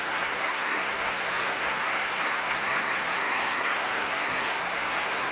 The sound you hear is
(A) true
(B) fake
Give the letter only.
B